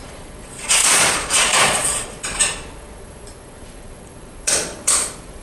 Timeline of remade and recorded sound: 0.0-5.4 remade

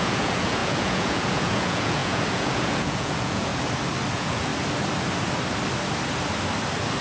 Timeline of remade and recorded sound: 0.0-3.5 remade; 3.5-4.1 recorded; 4.1-4.5 remade; 4.5-7.0 recorded